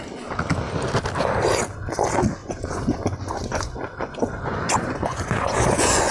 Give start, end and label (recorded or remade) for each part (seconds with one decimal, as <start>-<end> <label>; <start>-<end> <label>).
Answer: 0.0-2.4 recorded; 2.4-6.1 remade